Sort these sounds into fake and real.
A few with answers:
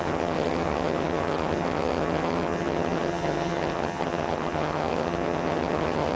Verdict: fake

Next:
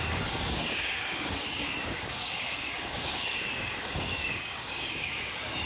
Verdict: fake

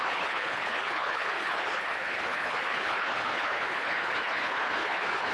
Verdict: fake